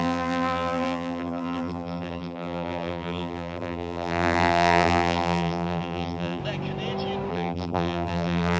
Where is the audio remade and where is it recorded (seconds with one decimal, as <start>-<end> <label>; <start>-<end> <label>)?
0.0-6.4 remade; 6.4-7.3 recorded; 7.3-8.6 remade